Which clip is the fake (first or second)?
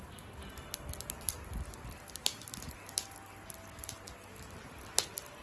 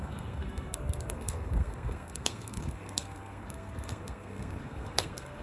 second